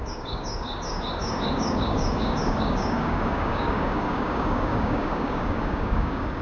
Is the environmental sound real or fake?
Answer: fake